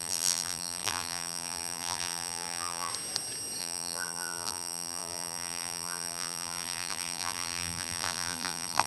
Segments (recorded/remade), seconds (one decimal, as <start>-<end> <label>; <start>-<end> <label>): 0.0-2.9 remade; 2.9-3.6 recorded; 3.6-8.9 remade